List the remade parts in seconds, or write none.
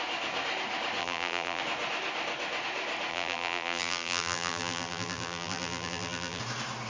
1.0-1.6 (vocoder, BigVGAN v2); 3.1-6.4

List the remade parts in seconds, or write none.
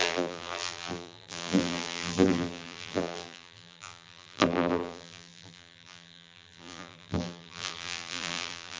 0.0-8.8 (vocoder, BigVGAN v2)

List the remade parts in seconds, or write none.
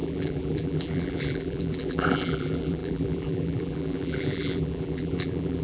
0.0-5.6 (vocoder, BigVGAN v2)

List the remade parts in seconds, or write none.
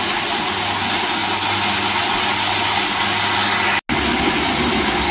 none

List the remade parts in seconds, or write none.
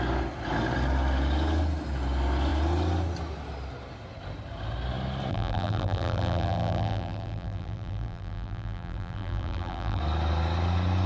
5.3-10.0 (vocoder, BigVGAN v2)